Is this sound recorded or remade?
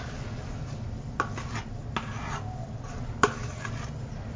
recorded